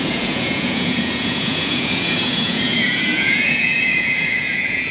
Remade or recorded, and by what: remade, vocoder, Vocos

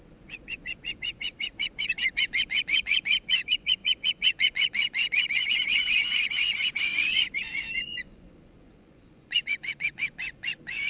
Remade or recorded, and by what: remade, vocoder, Vocos